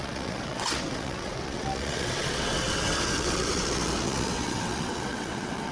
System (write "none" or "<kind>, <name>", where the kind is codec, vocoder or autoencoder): vocoder, WaveNeXt